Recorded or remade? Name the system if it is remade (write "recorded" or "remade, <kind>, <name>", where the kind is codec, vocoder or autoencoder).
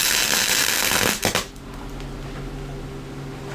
recorded